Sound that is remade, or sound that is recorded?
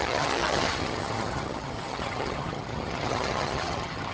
remade